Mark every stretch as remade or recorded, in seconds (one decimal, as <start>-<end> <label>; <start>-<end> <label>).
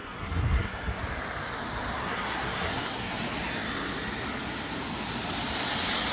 0.0-1.0 remade; 1.0-2.0 recorded; 2.0-3.2 remade; 3.2-6.1 recorded